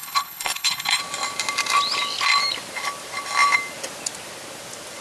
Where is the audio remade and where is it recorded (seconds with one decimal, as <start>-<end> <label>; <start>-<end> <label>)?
0.0-1.0 remade; 1.0-5.0 recorded